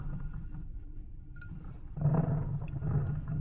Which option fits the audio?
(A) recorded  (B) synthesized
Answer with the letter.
A